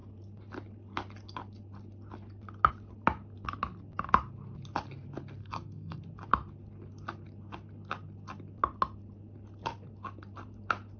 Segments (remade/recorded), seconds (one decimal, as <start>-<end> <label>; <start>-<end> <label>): 0.0-5.4 recorded; 5.4-6.0 remade; 6.0-11.0 recorded